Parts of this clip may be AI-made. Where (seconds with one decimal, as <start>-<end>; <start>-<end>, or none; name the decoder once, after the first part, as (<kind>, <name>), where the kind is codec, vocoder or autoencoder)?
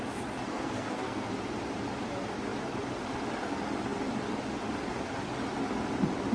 0.5-1.3 (codec, SNAC)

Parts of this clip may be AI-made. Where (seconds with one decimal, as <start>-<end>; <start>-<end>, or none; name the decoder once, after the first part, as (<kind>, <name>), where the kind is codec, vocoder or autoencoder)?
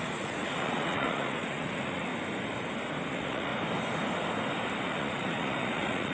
0.0-2.1 (vocoder, Vocos); 3.1-3.5; 4.8-6.1